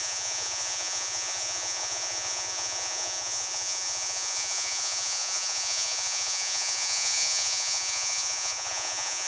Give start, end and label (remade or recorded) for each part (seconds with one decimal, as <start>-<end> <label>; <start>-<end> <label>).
0.0-9.3 remade